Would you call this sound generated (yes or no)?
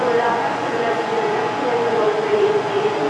yes